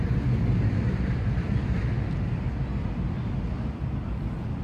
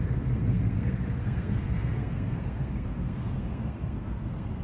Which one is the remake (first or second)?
second